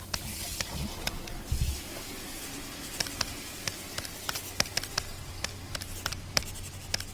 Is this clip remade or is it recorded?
recorded